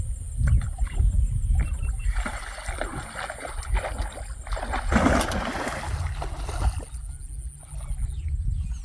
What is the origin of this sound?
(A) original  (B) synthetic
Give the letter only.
A